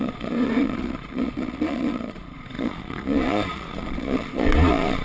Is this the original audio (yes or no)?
no